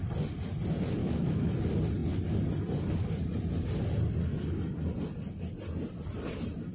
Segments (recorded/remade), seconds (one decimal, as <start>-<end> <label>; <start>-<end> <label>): 0.0-1.0 recorded; 1.0-1.5 remade; 1.5-6.7 recorded